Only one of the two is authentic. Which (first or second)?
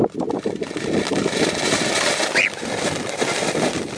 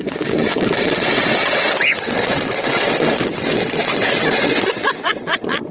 first